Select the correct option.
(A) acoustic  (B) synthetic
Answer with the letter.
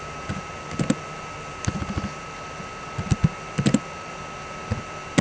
A